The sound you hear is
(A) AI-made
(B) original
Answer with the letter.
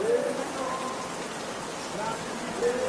B